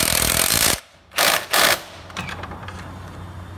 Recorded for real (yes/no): no